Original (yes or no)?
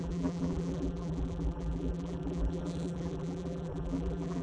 no